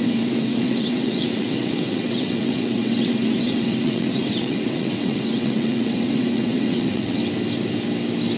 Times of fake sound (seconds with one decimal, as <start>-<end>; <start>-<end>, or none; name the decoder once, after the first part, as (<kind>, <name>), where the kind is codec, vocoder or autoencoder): 0.0-7.2 (vocoder, WaveNeXt)